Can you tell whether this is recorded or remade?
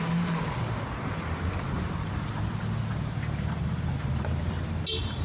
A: recorded